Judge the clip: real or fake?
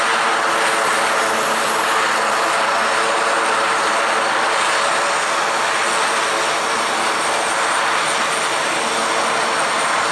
real